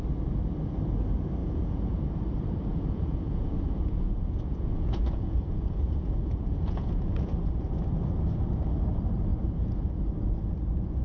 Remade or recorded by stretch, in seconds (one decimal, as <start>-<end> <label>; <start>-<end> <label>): 0.0-1.4 recorded; 1.4-2.0 remade; 2.0-2.7 recorded; 2.7-7.4 remade; 7.4-9.3 recorded; 9.3-10.0 remade; 10.0-11.0 recorded